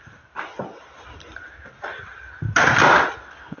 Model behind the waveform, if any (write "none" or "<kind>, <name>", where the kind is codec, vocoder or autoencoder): none